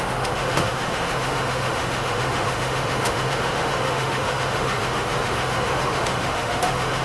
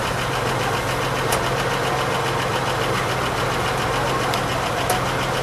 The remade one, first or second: first